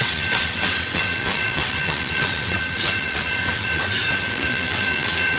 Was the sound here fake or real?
fake